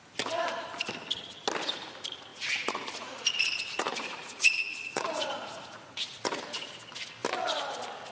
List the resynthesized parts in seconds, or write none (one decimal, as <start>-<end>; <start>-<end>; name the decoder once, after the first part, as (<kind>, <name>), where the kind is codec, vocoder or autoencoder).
2.3-6.4 (vocoder, Vocos)